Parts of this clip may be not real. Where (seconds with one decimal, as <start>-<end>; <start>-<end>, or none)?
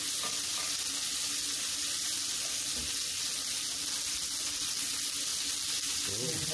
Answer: none